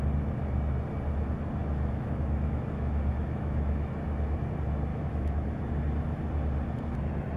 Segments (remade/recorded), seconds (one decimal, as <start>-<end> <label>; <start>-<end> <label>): 0.0-1.6 recorded; 1.6-3.9 remade; 3.9-4.9 recorded; 4.9-5.6 remade; 5.6-7.4 recorded